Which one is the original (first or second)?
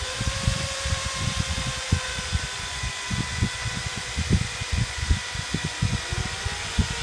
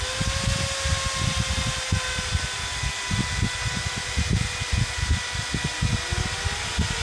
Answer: second